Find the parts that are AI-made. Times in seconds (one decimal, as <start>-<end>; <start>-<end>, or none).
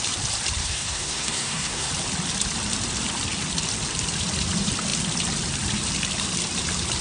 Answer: 0.6-1.9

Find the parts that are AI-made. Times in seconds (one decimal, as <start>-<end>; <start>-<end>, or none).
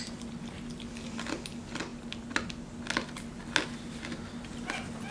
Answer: none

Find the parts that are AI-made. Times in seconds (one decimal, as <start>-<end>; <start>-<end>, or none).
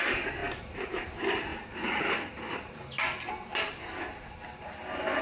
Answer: none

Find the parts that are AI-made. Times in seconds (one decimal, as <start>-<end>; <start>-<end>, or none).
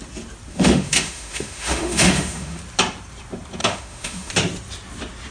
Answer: 0.5-2.6; 3.6-4.3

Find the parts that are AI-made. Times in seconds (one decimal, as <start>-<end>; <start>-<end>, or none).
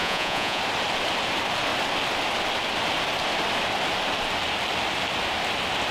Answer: 0.0-0.6